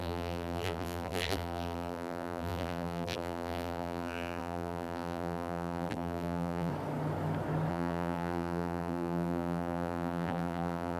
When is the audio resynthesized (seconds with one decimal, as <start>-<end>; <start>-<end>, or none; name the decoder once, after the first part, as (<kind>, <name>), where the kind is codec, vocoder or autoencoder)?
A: 0.0-6.7 (vocoder, BigVGAN v2); 7.7-11.0